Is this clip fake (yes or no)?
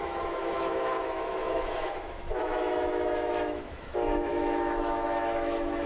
yes